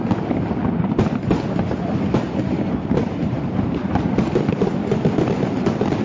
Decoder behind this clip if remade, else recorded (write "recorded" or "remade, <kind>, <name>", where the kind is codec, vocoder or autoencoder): recorded